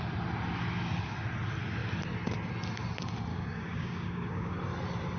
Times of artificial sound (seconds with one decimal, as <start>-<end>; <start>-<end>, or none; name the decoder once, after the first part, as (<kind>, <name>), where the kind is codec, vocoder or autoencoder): 3.3-4.6 (codec, DAC)